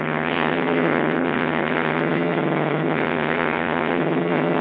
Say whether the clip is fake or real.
fake